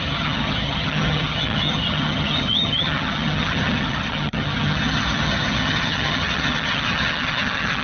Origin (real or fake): fake